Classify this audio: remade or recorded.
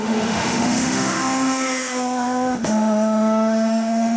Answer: remade